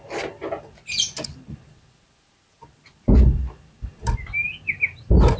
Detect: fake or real real